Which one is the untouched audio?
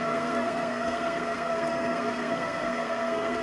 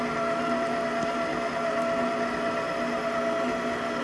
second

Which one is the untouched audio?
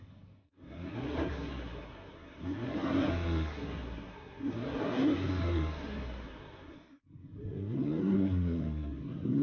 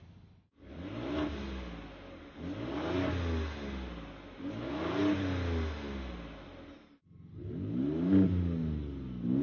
second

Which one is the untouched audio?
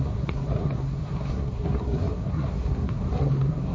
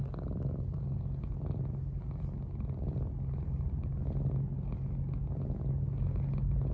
second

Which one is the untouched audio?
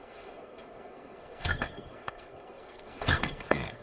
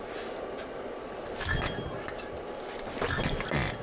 second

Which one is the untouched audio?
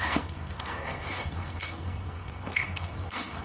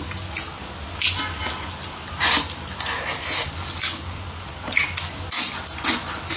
second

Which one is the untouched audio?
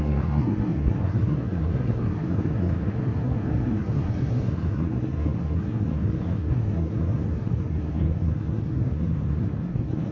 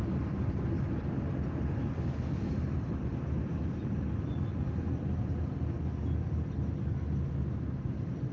second